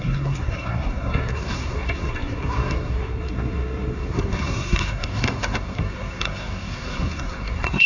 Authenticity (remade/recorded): remade